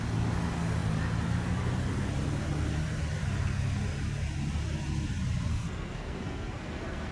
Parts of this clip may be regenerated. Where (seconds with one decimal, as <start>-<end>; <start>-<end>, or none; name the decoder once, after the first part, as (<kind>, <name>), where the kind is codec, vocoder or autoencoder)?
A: 5.5-7.1 (codec, SNAC)

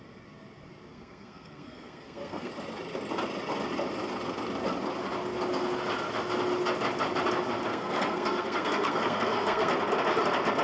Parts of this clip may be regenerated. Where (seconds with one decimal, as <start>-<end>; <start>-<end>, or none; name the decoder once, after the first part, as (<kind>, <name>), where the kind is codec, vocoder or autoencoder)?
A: 0.9-2.5 (codec, SNAC); 7.7-9.8

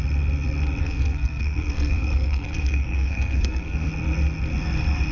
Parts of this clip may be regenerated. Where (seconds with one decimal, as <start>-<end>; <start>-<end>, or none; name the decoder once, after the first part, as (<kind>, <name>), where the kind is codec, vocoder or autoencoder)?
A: 0.8-3.9 (codec, SNAC)

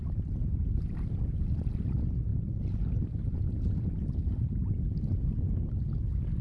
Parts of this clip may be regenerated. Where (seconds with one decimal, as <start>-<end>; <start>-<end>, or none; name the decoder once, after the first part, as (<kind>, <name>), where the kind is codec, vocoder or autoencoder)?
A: none

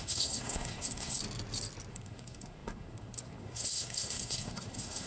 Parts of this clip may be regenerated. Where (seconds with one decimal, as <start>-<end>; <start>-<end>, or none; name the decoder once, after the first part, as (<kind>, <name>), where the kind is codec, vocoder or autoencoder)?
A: 0.0-1.2 (codec, SNAC); 1.9-5.1

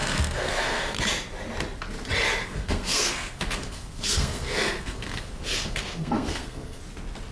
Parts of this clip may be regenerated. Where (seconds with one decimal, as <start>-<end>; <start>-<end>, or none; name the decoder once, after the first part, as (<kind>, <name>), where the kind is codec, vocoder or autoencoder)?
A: 0.0-1.0 (codec, SNAC); 2.4-6.8

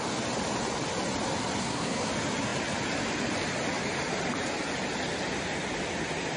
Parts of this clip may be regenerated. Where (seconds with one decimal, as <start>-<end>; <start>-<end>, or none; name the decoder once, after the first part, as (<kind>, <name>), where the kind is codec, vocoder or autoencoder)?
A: 1.6-2.1 (codec, SNAC)

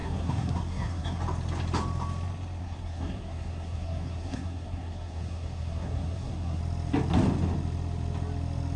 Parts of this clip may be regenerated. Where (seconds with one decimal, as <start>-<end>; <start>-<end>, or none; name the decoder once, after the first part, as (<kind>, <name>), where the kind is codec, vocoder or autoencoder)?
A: 0.0-1.2 (codec, SNAC); 2.6-6.6